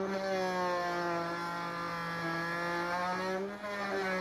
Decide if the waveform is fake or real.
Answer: real